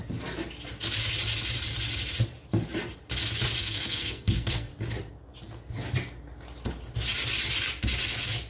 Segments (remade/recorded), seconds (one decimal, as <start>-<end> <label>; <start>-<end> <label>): 0.0-3.6 recorded; 3.6-4.7 remade; 4.7-8.5 recorded